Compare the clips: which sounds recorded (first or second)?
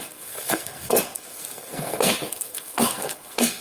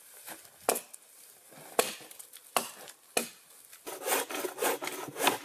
second